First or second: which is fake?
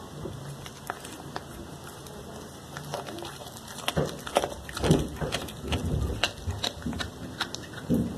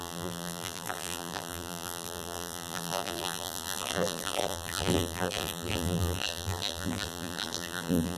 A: second